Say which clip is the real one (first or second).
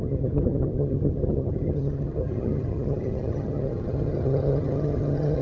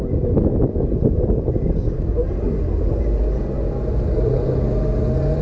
second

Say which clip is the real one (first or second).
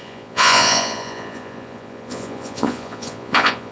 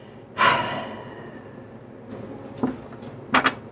second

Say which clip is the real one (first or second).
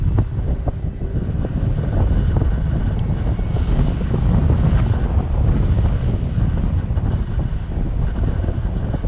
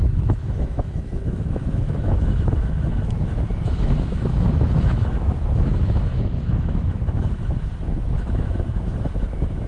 first